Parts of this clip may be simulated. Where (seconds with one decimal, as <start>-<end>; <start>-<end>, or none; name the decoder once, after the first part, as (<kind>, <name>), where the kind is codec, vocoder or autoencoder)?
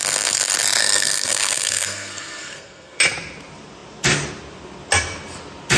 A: 0.8-3.0 (codec, SNAC)